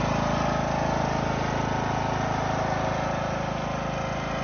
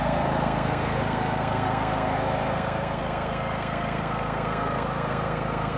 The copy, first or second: second